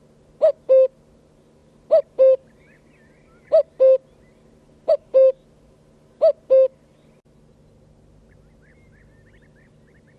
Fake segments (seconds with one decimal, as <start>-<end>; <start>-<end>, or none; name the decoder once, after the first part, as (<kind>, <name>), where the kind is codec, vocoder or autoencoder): none

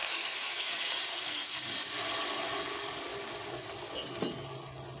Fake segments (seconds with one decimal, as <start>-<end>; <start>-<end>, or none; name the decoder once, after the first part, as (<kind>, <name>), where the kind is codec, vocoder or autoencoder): 0.0-0.7 (codec, SNAC); 1.1-1.6

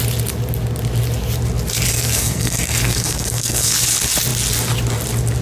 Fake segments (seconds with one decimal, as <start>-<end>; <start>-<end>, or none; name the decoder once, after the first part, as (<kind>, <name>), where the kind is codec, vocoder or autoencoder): 1.9-3.8 (codec, SNAC)

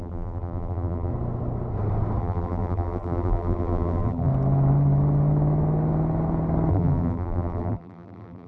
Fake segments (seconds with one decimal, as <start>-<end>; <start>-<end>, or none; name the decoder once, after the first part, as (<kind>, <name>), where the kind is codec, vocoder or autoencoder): 0.0-1.1 (vocoder, BigVGAN v2); 2.2-4.3; 6.7-8.5

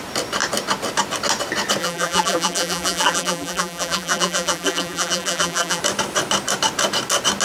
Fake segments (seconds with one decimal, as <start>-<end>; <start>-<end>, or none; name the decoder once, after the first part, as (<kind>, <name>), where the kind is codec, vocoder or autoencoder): 1.8-5.8 (vocoder, BigVGAN v2)